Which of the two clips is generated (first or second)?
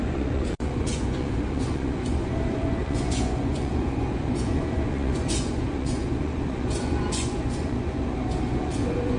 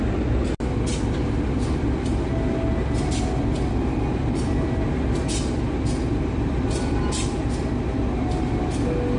first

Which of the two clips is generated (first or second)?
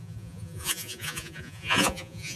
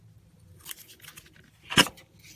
first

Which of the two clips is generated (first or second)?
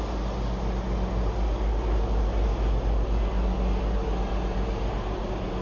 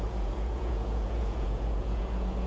second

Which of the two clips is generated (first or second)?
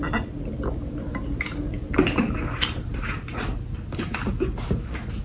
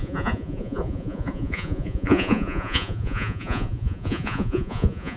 second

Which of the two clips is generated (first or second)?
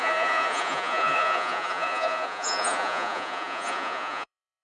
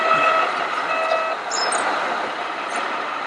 first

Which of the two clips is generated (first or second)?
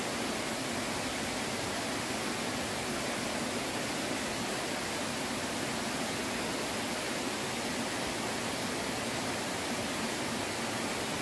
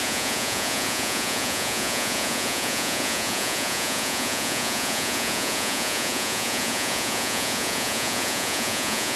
second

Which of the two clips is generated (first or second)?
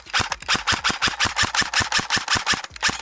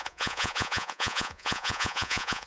second